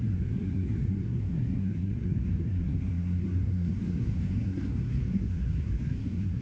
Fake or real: fake